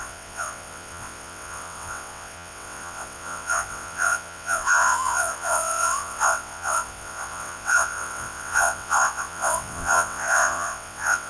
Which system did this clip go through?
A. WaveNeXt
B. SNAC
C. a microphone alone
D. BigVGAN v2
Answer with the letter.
A